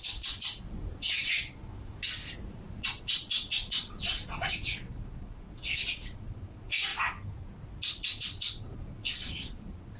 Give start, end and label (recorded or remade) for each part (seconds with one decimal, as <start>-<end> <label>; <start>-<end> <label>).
0.0-1.7 remade; 1.7-2.8 recorded; 2.8-6.9 remade; 6.9-8.2 recorded; 8.2-10.0 remade